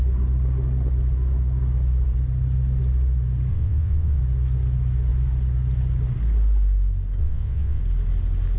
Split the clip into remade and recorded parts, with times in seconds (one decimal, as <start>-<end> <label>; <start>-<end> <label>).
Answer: 0.0-3.5 recorded; 3.5-4.2 remade; 4.2-7.2 recorded; 7.2-7.8 remade; 7.8-8.6 recorded